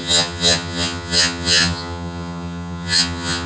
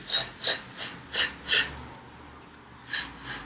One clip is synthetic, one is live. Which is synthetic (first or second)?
first